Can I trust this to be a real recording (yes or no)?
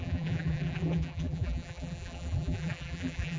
no